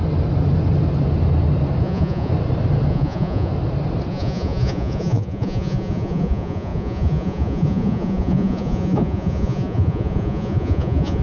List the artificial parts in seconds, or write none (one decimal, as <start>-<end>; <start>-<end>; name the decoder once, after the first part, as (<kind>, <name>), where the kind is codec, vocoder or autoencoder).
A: 1.8-2.3 (vocoder, Vocos); 2.9-3.5; 4.1-11.2